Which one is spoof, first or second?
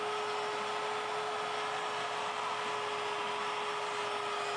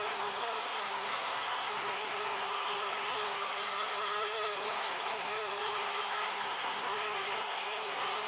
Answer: second